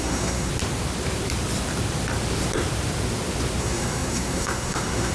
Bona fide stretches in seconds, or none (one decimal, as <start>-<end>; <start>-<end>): 0.5-3.6